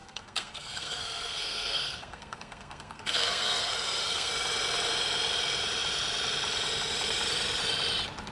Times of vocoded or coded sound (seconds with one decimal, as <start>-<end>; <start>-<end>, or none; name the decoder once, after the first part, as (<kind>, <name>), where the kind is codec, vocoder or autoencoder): 0.0-4.3 (codec, SNAC)